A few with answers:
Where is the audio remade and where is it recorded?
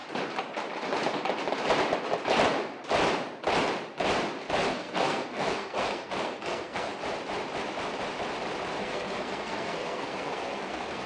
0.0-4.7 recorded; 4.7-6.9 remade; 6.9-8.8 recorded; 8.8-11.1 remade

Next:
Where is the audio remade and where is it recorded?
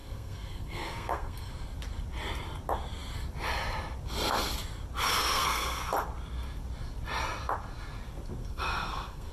0.0-1.5 remade; 1.5-5.2 recorded; 5.2-5.8 remade; 5.8-8.4 recorded; 8.4-9.3 remade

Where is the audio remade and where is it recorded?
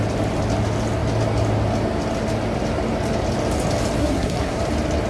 0.0-4.0 recorded; 4.0-4.6 remade; 4.6-5.1 recorded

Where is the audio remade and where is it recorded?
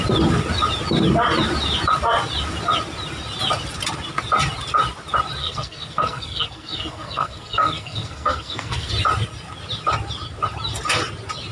0.0-5.4 recorded; 5.4-8.9 remade; 8.9-11.5 recorded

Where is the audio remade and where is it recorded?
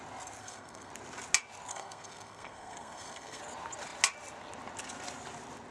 0.0-0.4 recorded; 0.4-0.9 remade; 0.9-1.7 recorded; 1.7-3.4 remade; 3.4-5.7 recorded